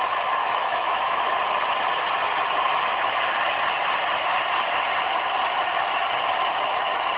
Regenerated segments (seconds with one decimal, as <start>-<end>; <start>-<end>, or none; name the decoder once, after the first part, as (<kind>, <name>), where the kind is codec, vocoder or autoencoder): 0.4-1.3 (autoencoder, DAC-VAE); 2.7-3.2